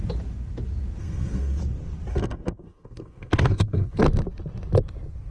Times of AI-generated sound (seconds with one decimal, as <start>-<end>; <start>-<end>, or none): 1.0-1.6; 2.1-4.0